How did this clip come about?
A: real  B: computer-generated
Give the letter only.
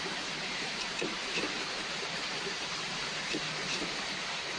B